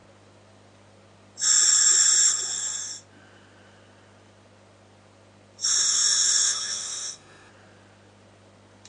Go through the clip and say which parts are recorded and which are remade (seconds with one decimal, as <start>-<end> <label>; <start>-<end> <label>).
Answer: 0.0-5.8 recorded; 5.8-7.5 remade; 7.5-8.9 recorded